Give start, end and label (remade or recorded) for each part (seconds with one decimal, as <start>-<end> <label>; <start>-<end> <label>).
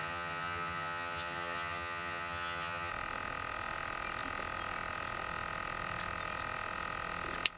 0.0-2.9 remade; 2.9-7.6 recorded